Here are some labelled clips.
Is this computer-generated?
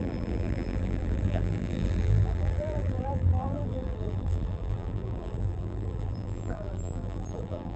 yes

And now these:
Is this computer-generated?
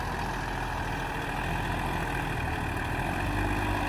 no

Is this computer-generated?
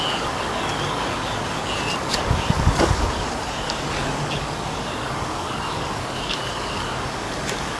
yes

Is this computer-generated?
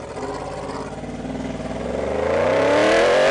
no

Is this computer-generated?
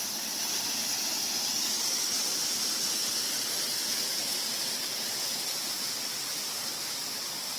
no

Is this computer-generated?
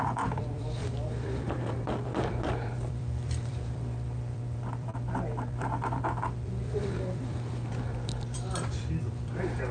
yes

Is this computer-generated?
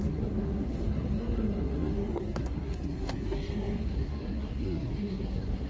yes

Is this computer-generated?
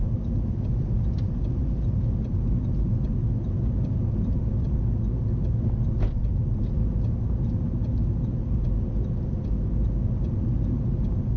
no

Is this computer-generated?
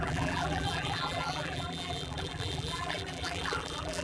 yes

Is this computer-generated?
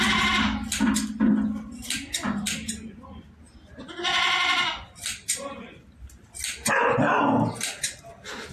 no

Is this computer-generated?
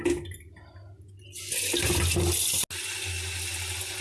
no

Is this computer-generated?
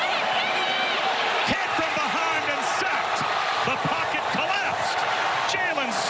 no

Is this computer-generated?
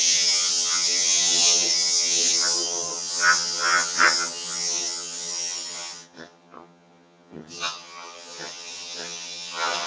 yes